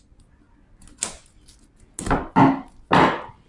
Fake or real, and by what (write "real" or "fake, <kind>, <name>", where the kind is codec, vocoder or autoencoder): real